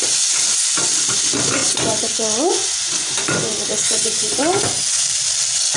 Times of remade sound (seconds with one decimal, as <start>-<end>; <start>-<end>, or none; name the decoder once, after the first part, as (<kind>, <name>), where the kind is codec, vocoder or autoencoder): 1.6-4.6 (vocoder, Vocos)

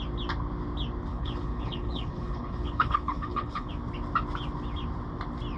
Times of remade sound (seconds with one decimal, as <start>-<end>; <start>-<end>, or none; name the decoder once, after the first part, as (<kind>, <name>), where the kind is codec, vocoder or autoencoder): 1.1-3.7 (codec, HILCodec)